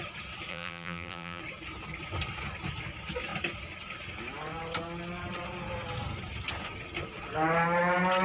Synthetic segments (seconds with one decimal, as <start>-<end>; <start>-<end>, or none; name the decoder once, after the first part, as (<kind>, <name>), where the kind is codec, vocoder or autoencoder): 0.5-1.4 (vocoder, BigVGAN v2)